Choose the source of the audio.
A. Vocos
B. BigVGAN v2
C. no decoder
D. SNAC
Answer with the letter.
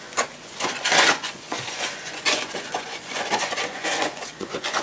A